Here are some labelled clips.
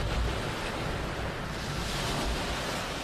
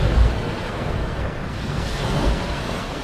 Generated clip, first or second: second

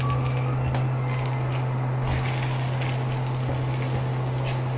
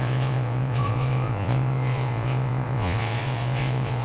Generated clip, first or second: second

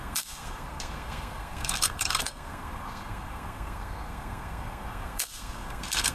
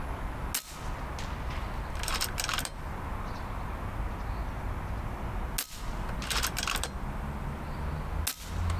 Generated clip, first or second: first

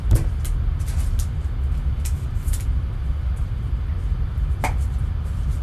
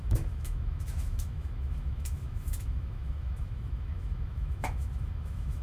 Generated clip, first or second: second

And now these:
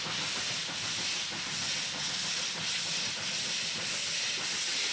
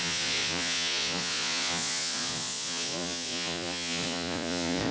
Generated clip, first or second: second